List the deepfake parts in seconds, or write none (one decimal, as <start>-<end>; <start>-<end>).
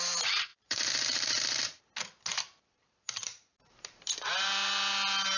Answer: 0.5-1.8; 2.3-4.1